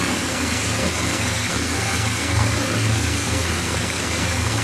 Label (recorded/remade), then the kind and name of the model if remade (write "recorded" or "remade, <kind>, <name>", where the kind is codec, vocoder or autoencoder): remade, codec, SNAC